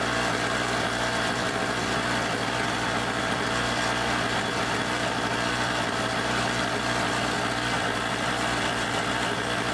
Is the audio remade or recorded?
recorded